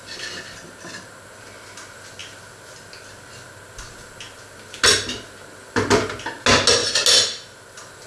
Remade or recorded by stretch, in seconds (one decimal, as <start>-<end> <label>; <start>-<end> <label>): 0.0-8.1 recorded